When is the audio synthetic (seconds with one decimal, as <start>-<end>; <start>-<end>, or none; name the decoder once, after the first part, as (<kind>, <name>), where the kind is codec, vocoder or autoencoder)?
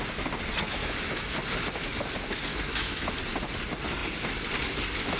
0.8-1.3 (autoencoder, DAC-VAE); 2.5-3.1